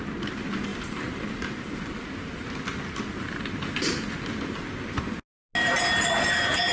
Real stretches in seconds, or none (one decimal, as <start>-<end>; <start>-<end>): 0.0-6.7